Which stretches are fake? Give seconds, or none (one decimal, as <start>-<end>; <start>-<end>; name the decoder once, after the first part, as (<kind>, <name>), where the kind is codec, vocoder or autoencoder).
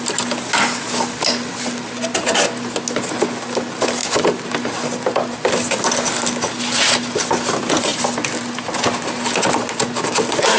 none